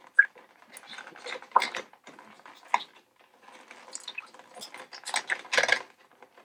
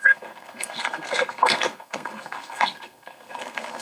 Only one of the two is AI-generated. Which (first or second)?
second